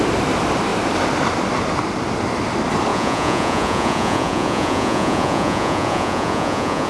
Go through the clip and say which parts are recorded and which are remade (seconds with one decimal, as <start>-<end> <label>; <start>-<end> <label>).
0.0-2.9 recorded; 2.9-6.9 remade